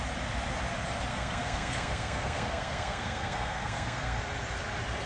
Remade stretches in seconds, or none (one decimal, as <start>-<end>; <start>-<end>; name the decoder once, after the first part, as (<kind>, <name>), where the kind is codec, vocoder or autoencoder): 1.1-4.2 (codec, SNAC)